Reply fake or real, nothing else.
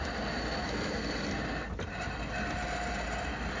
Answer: real